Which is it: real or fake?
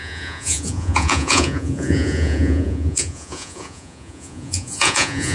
fake